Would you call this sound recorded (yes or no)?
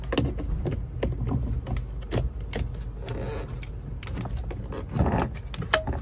yes